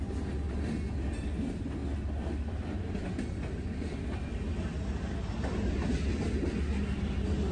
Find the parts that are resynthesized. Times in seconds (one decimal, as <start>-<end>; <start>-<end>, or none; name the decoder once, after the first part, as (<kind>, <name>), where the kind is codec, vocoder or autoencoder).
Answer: none